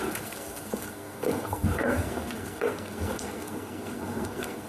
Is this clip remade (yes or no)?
yes